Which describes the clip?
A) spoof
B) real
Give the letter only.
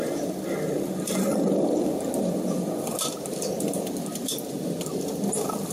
B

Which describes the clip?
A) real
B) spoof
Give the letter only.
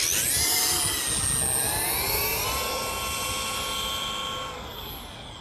A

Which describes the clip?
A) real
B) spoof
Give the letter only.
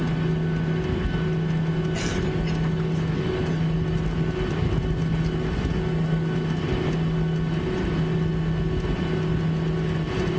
A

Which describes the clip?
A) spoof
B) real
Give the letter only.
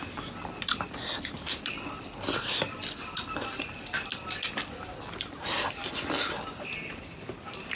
B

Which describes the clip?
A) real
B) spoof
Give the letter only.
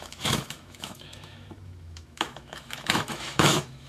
B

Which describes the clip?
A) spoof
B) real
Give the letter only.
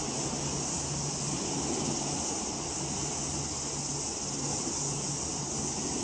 B